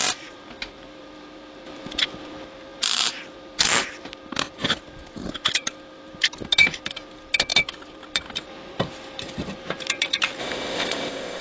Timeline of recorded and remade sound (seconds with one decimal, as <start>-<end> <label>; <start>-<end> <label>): 0.0-10.4 recorded; 10.4-11.4 remade